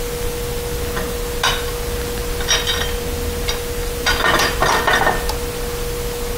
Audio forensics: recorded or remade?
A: recorded